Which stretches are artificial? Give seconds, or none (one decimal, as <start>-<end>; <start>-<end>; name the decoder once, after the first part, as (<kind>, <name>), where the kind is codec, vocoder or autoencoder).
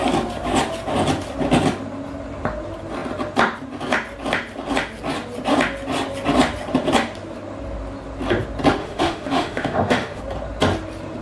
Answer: 8.8-10.2 (autoencoder, DAC-VAE)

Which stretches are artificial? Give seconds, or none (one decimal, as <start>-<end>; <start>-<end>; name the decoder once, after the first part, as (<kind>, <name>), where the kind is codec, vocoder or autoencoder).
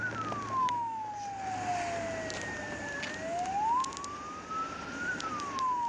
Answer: 0.6-1.1 (autoencoder, DAC-VAE)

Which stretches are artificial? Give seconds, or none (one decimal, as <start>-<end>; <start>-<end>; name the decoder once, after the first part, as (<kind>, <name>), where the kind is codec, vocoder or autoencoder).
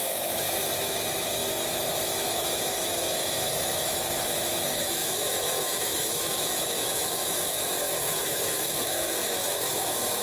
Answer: 0.0-10.2 (autoencoder, DAC-VAE)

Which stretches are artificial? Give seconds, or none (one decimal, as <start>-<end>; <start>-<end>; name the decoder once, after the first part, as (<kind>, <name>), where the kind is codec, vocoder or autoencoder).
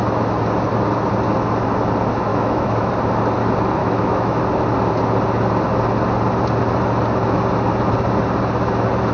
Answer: 2.3-2.9 (autoencoder, DAC-VAE); 3.8-4.4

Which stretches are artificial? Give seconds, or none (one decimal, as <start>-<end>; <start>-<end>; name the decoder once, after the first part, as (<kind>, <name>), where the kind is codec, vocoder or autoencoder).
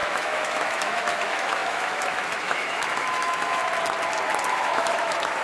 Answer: 0.0-3.6 (autoencoder, DAC-VAE); 4.5-5.4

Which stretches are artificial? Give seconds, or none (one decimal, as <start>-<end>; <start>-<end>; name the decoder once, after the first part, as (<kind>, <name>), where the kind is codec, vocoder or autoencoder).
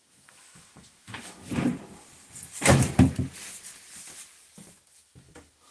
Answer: 0.0-1.5 (autoencoder, DAC-VAE); 4.9-5.7